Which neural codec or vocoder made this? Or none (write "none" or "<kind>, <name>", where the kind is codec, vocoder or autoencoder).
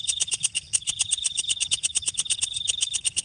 codec, HILCodec